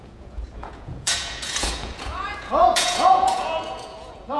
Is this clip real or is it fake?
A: fake